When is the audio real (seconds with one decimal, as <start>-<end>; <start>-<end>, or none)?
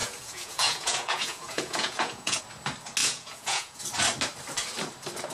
2.4-3.0; 3.8-5.3